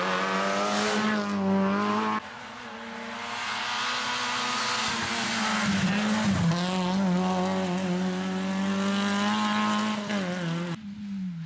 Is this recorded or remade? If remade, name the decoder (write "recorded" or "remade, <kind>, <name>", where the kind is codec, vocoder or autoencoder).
recorded